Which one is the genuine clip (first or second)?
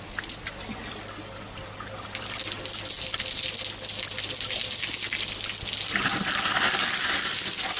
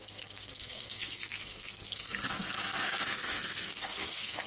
first